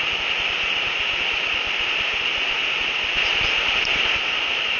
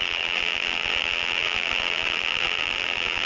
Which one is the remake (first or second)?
second